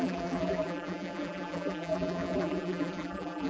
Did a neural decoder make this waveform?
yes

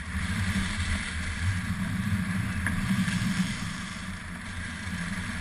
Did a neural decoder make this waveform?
yes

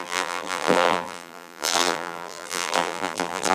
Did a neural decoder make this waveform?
yes